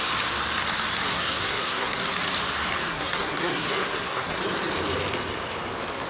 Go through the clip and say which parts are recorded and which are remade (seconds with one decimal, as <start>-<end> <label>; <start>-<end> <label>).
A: 0.0-1.1 recorded; 1.1-2.0 remade; 2.0-2.9 recorded; 2.9-4.4 remade; 4.4-6.1 recorded